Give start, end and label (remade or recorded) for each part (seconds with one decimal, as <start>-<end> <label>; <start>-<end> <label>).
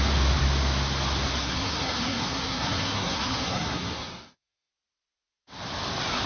0.0-1.4 recorded; 1.4-4.7 remade; 4.7-6.3 recorded